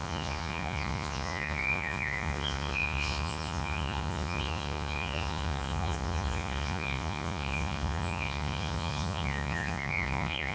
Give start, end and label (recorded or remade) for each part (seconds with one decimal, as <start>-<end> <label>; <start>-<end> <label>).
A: 0.0-10.5 remade